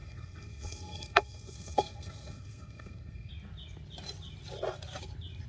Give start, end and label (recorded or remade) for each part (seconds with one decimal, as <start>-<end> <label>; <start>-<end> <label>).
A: 0.0-3.3 remade; 3.3-5.5 recorded